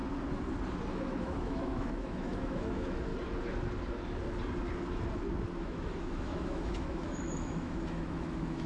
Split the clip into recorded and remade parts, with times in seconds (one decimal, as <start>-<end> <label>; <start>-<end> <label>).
0.0-0.9 recorded; 0.9-3.1 remade; 3.1-5.6 recorded; 5.6-8.7 remade